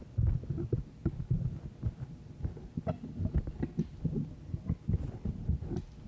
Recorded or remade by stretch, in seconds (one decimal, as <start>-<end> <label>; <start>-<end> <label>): 0.0-6.1 recorded